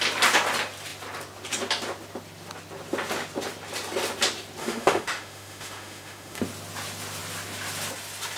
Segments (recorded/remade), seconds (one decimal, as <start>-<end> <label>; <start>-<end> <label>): 0.0-4.6 recorded; 4.6-6.4 remade; 6.4-8.4 recorded